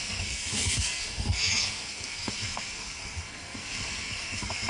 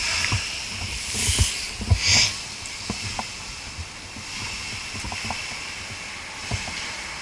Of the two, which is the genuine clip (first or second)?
second